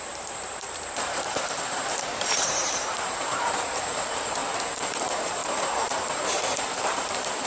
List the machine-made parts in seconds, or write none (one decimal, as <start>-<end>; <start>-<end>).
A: 0.0-4.4; 4.9-5.4; 6.6-7.5

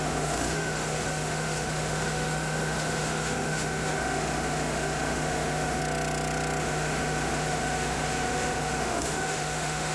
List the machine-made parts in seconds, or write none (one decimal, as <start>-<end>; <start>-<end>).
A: 0.0-5.8; 6.6-9.9

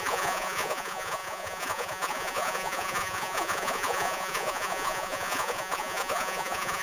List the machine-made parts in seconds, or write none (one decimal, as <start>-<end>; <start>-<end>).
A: 0.0-6.8

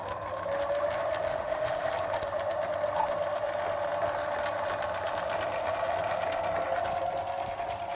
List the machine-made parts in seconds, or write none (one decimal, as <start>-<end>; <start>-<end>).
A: 1.3-1.9

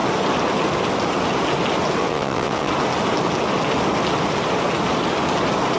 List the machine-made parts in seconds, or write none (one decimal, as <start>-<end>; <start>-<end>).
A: 2.0-2.7

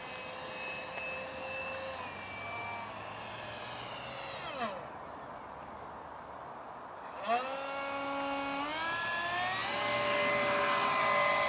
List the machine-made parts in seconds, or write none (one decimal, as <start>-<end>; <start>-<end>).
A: none

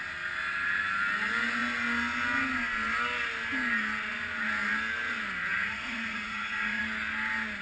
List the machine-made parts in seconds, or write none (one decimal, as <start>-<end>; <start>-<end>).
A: 5.5-6.8

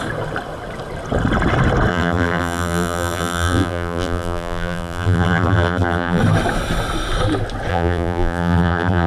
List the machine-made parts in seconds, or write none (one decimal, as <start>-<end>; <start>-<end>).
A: 1.9-6.2; 7.7-9.1